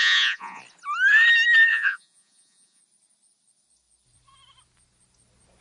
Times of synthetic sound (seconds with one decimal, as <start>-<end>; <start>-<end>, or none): 0.0-0.6; 1.7-2.8